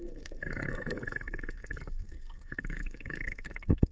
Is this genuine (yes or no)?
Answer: no